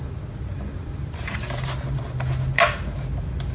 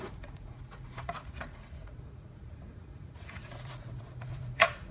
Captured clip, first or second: first